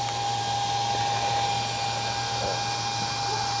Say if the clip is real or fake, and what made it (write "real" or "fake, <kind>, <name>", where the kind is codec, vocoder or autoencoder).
real